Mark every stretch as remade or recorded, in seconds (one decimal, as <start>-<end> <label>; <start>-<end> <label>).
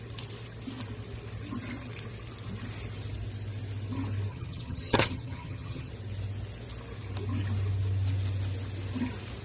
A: 0.0-4.3 recorded; 4.3-5.9 remade; 5.9-9.4 recorded